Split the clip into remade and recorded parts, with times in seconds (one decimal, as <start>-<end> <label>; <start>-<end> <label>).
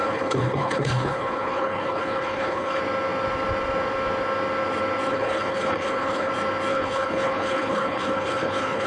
0.0-2.8 remade; 2.8-5.1 recorded; 5.1-6.3 remade; 6.3-6.7 recorded; 6.7-8.9 remade